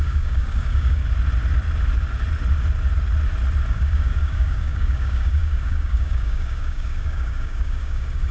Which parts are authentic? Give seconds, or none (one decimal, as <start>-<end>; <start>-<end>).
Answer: 1.0-3.7